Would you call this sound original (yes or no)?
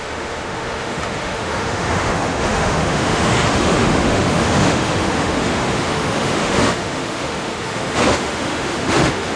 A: no